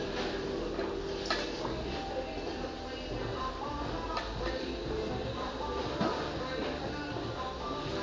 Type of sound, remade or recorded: recorded